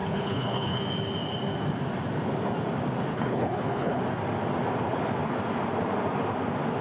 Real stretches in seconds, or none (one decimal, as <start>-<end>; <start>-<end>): 0.8-3.1; 4.0-6.8